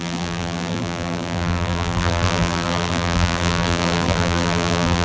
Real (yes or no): no